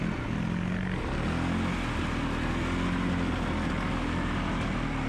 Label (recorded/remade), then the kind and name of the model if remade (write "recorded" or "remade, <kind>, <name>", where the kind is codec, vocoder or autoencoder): recorded